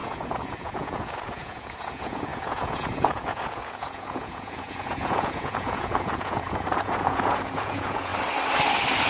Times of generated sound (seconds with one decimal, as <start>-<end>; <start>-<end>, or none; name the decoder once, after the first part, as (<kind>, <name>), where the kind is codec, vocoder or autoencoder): 0.0-8.1 (vocoder, Vocos)